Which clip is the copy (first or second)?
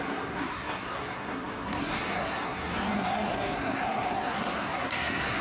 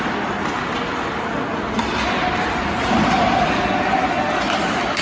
first